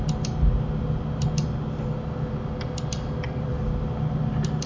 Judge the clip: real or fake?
real